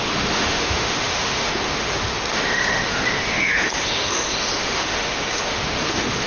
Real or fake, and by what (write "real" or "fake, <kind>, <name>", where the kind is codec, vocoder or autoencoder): fake, autoencoder, DAC-VAE